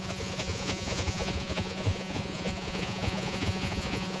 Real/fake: fake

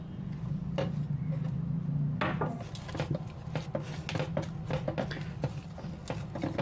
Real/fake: real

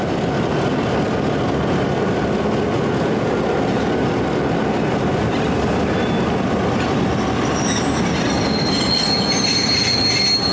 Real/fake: real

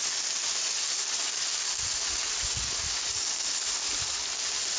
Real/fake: real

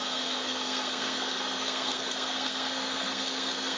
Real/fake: fake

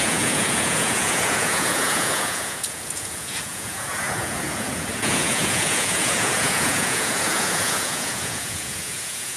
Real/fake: fake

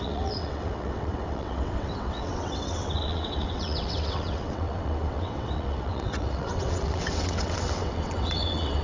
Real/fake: fake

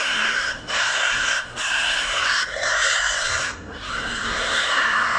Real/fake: fake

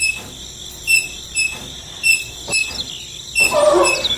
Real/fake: real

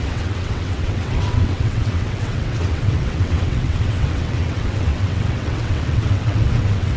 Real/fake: fake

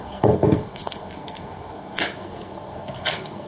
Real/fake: fake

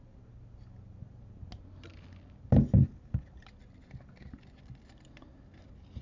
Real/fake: real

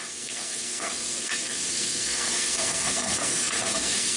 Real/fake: fake